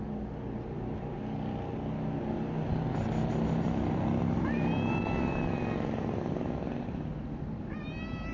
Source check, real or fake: real